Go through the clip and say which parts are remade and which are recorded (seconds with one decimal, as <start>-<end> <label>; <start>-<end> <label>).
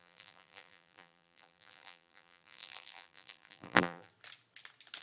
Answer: 0.0-4.1 remade; 4.1-5.0 recorded